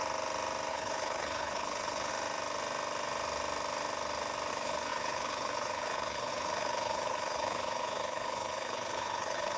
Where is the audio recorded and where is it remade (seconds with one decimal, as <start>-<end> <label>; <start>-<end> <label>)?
0.0-0.7 recorded; 0.7-2.1 remade; 2.1-4.5 recorded; 4.5-9.6 remade